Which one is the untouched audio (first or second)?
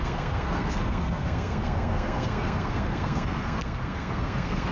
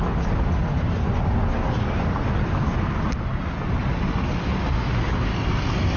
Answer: second